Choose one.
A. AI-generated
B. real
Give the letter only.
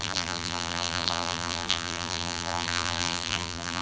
A